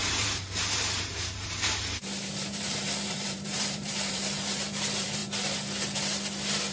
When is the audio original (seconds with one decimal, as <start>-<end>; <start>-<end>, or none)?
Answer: 5.2-6.7